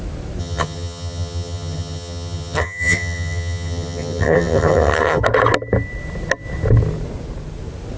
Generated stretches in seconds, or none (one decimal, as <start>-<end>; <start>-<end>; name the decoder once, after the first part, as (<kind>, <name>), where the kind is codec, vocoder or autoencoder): 0.4-5.2 (vocoder, HiFi-GAN)